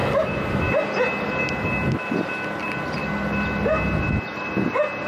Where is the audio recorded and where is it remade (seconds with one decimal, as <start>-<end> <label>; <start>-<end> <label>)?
0.0-5.1 recorded